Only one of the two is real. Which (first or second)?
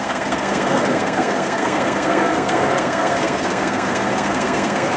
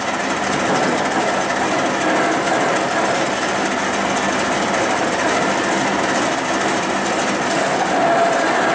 second